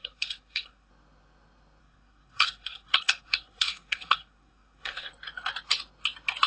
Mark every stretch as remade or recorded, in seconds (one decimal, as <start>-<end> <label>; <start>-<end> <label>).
0.0-0.9 remade; 0.9-1.8 recorded; 1.8-5.1 remade; 5.1-6.5 recorded